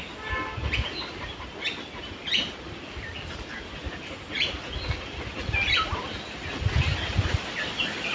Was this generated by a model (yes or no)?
no